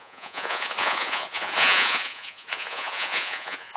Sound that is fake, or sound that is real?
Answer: fake